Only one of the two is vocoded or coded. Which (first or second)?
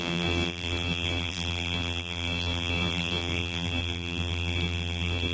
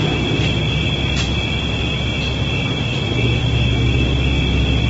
first